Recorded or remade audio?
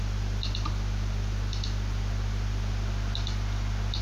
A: recorded